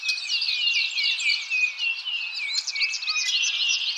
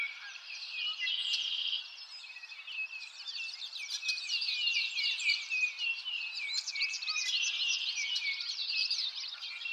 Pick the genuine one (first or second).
first